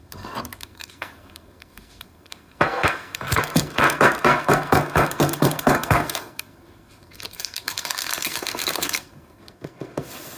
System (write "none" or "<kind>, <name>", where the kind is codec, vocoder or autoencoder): codec, SNAC